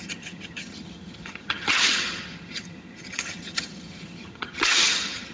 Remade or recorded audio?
remade